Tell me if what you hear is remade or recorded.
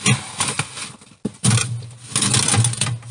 recorded